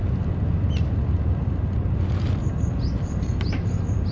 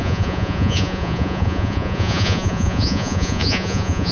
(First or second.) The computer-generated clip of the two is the second